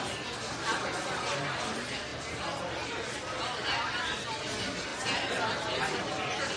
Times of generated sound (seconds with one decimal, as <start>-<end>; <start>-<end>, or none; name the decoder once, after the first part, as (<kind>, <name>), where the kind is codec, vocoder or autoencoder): none